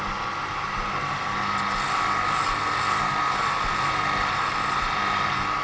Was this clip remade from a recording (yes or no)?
no